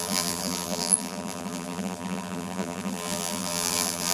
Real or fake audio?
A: fake